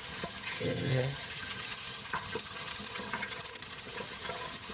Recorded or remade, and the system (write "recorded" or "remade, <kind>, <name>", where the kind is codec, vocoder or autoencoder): remade, vocoder, HiFi-GAN